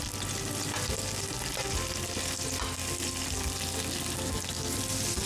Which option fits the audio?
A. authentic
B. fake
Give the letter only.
A